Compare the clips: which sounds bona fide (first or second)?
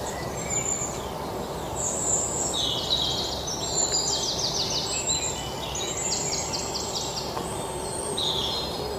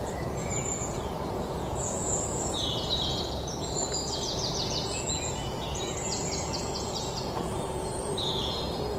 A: first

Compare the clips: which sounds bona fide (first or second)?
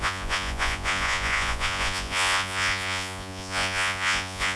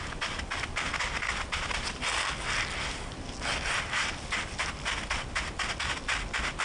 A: second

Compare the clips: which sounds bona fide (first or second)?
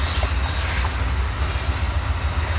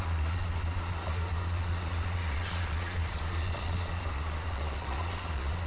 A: first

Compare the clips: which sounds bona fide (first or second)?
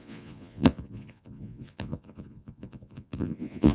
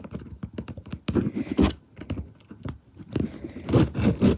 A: second